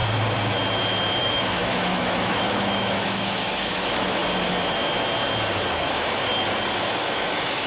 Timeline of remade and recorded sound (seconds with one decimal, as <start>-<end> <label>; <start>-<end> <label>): 0.0-1.2 recorded; 1.2-4.2 remade; 4.2-5.7 recorded; 5.7-6.3 remade; 6.3-7.0 recorded; 7.0-7.7 remade